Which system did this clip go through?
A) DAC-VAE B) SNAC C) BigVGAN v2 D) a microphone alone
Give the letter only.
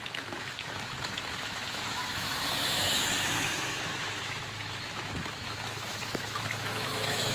A